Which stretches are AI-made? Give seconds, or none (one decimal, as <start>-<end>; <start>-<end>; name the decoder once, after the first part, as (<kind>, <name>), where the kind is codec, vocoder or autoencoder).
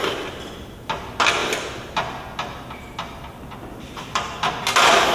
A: none